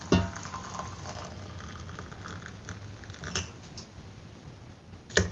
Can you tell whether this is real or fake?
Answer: real